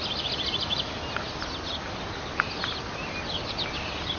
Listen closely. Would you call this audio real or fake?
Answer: real